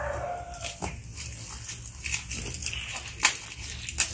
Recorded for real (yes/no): yes